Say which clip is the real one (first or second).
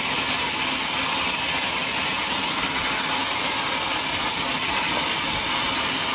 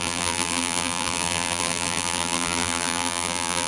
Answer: first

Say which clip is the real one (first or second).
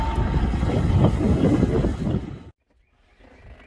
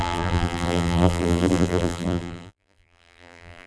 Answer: first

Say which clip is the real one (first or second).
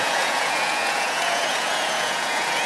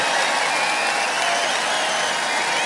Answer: second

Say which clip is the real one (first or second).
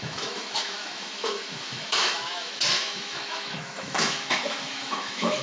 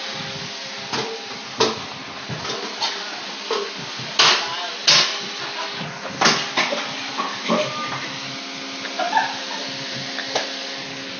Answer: second